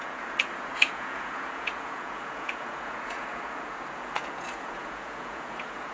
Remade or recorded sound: remade